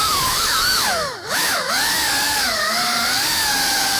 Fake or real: fake